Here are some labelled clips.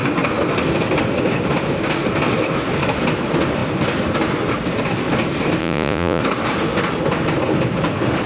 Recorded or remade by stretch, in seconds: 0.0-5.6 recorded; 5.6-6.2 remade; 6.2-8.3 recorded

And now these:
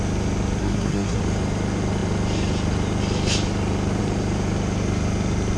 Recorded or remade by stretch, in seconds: 0.0-0.6 recorded; 0.6-1.2 remade; 1.2-5.6 recorded